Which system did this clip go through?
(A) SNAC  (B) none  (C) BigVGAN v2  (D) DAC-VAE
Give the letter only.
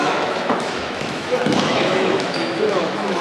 D